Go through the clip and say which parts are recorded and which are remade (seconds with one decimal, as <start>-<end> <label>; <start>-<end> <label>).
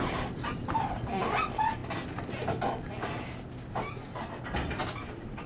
0.0-1.8 remade; 1.8-5.1 recorded; 5.1-5.5 remade